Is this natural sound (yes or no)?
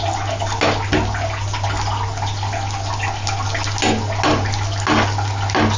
yes